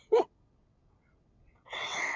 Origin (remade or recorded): remade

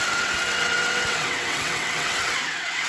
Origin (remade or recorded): remade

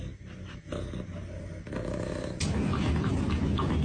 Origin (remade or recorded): recorded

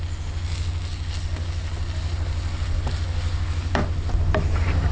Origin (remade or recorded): recorded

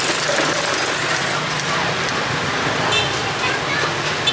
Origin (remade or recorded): recorded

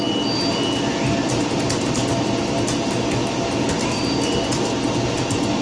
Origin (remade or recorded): recorded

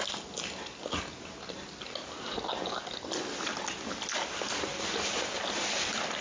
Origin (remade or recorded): recorded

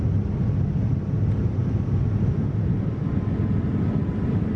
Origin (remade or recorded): recorded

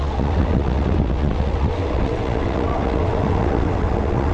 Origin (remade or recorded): remade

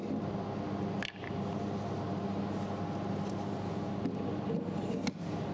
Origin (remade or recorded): recorded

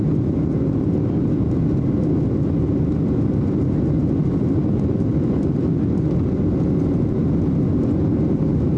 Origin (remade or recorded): recorded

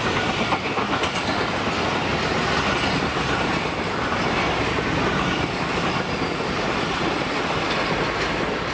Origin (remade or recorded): recorded